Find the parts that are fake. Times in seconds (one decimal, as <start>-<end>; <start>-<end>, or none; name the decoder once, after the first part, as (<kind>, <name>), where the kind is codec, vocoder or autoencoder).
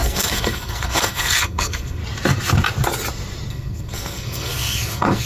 0.0-2.0 (codec, SNAC); 3.5-5.3